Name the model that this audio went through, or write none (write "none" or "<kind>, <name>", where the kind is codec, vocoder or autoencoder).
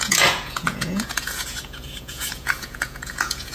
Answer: vocoder, Vocos